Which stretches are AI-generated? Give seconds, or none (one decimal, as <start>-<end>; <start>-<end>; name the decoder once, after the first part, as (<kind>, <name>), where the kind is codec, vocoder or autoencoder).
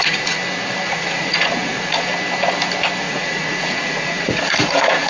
0.0-0.4 (vocoder, Vocos); 0.9-2.1; 3.0-5.1